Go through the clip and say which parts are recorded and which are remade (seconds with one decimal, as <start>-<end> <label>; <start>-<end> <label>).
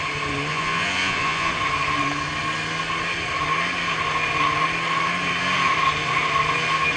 0.0-0.5 recorded; 0.5-1.5 remade; 1.5-7.0 recorded